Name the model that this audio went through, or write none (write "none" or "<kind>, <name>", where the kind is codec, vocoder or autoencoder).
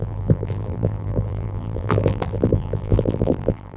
vocoder, BigVGAN v2